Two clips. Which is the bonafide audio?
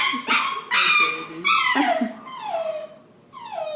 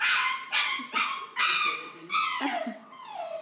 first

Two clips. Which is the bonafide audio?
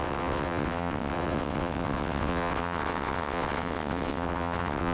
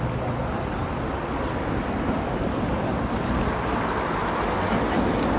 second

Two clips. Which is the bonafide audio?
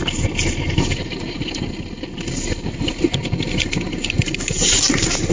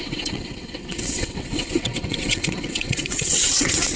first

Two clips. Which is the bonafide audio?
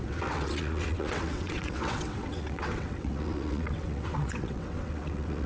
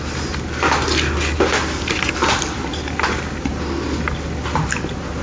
second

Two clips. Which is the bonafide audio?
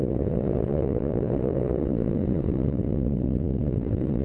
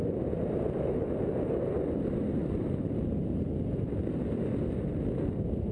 second